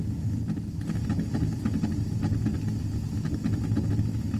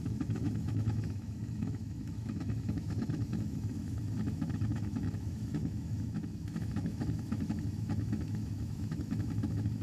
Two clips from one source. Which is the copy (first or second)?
second